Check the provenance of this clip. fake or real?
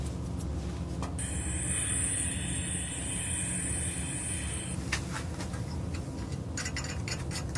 real